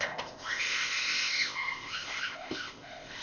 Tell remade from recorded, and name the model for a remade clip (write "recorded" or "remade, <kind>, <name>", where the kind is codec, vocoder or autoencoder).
remade, codec, ZipCodec